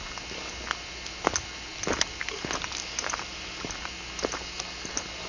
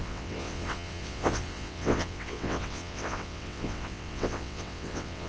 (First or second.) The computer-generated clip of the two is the second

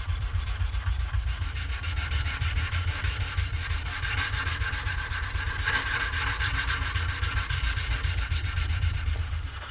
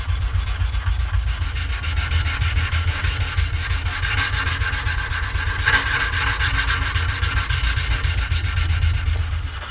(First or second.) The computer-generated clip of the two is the first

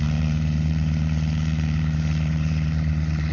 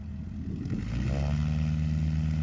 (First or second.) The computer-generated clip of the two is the first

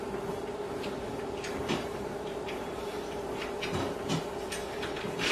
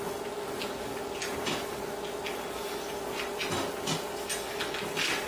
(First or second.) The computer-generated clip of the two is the first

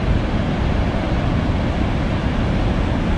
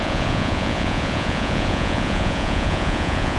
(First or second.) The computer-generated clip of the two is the second